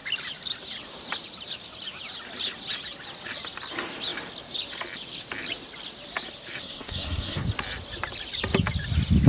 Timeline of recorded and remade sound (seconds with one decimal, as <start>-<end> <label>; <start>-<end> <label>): 0.0-6.6 recorded; 6.6-7.5 remade; 7.5-9.3 recorded